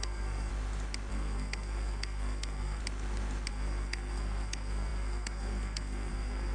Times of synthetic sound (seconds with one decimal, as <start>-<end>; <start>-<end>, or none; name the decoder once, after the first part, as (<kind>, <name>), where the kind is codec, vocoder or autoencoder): 0.0-0.5 (codec, SNAC); 1.1-2.8; 3.5-6.5